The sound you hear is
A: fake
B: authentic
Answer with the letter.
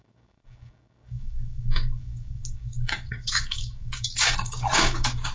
A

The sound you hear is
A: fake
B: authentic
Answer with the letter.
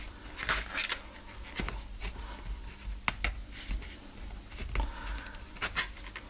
B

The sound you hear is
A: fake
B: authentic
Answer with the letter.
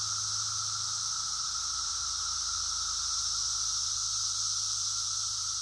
B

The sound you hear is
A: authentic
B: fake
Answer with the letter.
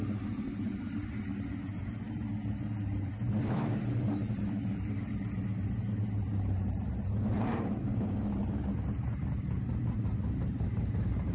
B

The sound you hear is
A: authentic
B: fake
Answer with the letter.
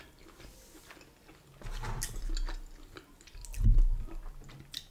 A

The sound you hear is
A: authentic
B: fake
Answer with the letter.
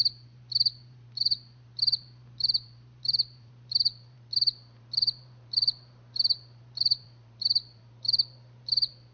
B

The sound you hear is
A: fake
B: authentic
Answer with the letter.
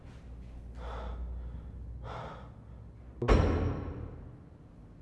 B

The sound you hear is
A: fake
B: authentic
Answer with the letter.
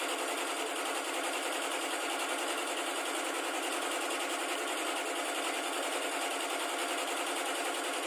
B